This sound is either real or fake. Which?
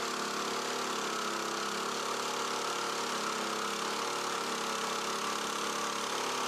real